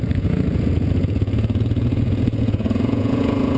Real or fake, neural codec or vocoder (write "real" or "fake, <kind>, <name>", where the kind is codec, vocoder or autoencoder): fake, vocoder, Vocos